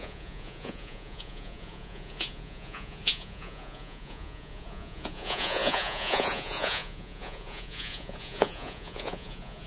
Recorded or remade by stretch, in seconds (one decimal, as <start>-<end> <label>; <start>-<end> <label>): 0.0-9.7 remade